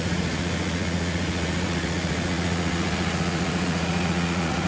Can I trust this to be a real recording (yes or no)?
no